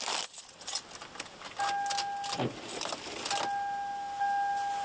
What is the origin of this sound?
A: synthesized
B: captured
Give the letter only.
B